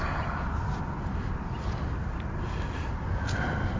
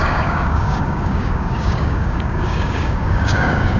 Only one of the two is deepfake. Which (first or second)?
second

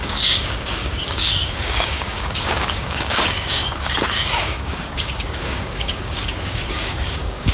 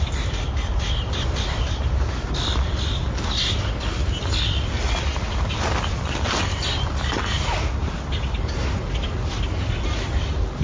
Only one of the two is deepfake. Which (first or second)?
first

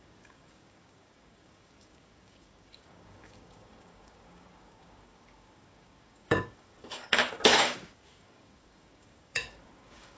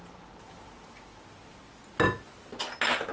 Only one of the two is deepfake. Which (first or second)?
first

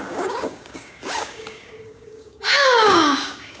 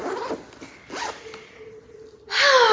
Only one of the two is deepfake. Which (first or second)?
first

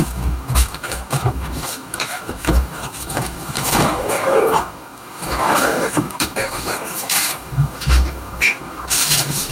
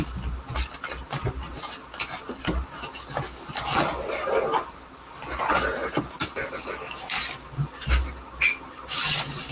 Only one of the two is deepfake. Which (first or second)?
first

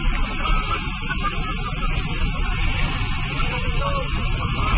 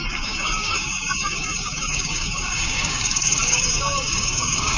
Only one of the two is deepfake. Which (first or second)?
second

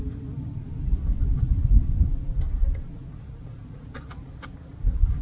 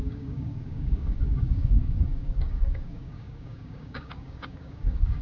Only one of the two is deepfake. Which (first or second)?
second